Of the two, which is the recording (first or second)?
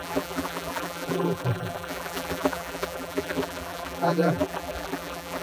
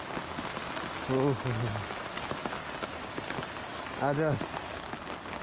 second